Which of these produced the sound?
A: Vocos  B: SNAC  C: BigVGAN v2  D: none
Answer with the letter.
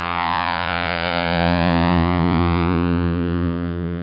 A